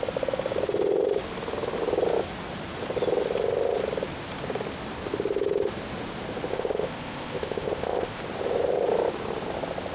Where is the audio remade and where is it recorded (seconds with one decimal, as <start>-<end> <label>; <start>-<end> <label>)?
0.0-6.5 recorded; 6.5-8.2 remade; 8.2-9.9 recorded